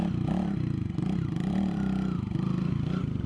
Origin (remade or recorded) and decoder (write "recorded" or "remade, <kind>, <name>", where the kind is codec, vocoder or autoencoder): recorded